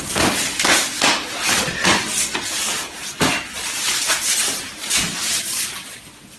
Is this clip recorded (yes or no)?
yes